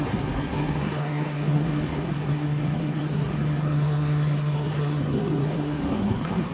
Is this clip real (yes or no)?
no